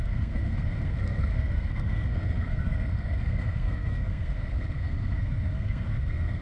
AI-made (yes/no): yes